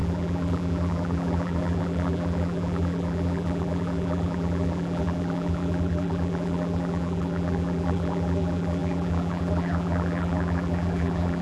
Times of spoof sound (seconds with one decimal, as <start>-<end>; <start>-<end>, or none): 0.0-11.4